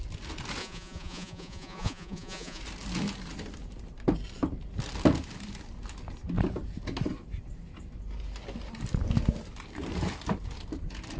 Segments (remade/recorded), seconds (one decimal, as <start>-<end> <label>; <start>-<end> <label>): 0.0-0.6 recorded; 0.6-2.6 remade; 2.6-11.2 recorded